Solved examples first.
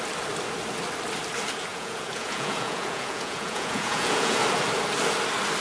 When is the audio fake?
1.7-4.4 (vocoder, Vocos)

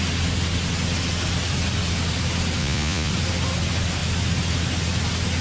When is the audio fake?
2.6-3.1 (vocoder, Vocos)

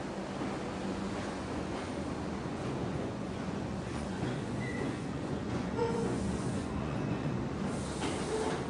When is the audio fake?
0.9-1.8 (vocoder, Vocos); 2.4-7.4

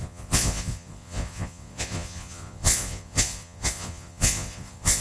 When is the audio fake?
0.0-5.0 (vocoder, Vocos)